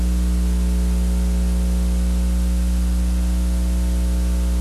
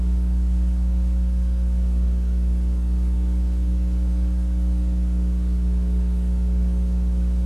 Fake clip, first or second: second